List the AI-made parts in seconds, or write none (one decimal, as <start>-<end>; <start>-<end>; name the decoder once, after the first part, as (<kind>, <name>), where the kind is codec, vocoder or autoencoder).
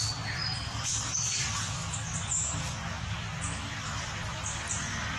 none